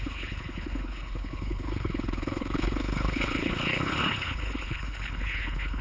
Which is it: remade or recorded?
remade